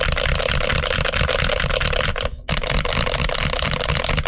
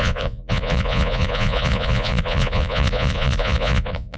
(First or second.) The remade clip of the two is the second